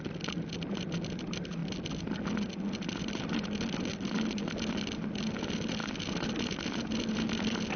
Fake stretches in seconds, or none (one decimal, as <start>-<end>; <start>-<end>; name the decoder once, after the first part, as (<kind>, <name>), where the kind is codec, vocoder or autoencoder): none